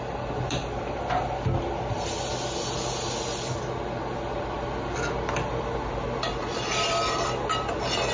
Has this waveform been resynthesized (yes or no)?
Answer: no